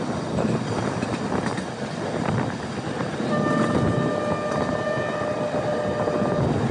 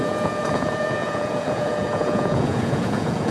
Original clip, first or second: first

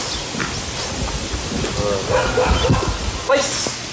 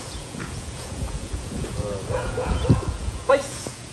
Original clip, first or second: first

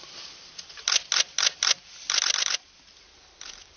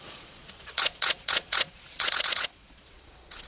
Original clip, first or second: first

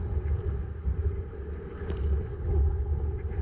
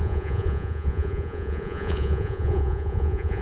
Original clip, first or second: first